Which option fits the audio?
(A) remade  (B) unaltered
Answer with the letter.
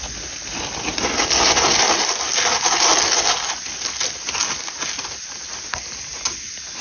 B